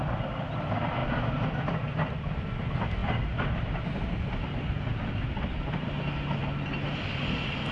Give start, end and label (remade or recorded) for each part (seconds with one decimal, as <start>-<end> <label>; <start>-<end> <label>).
0.0-7.7 recorded